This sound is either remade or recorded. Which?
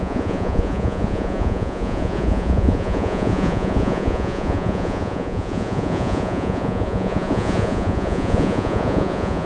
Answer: remade